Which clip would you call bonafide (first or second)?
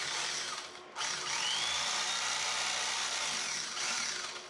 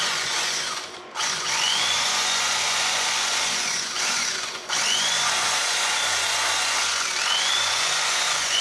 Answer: first